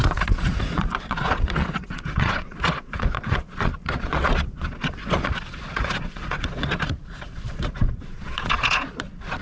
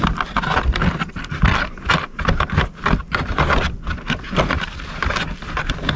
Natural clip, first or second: second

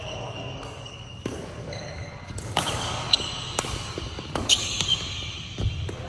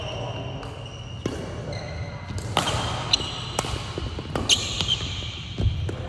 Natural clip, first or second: second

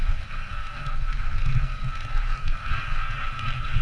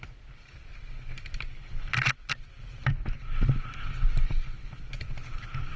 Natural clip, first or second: second